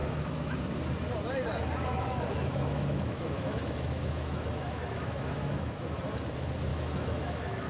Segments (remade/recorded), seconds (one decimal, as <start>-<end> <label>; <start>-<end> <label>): 0.0-0.6 remade; 0.6-1.9 recorded; 1.9-6.0 remade; 6.0-6.7 recorded; 6.7-7.7 remade